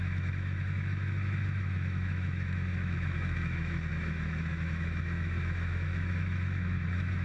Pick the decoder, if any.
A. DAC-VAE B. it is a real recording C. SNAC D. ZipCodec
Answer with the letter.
A